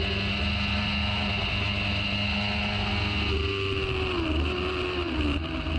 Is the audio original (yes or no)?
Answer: yes